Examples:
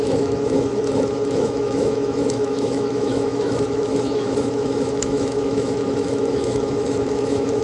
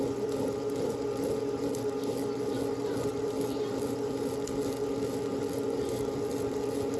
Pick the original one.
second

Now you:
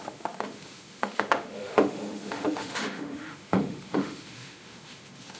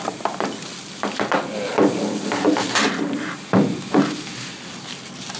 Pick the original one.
second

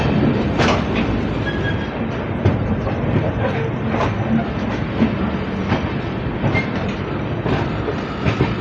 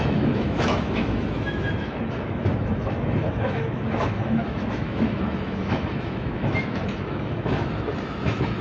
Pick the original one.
first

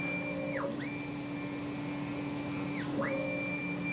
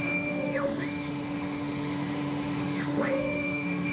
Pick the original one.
first